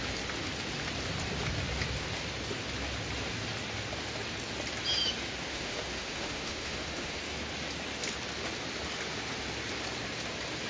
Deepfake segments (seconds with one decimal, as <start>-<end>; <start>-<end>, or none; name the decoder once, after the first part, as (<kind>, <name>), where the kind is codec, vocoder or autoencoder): 5.5-7.2 (autoencoder, DAC-VAE)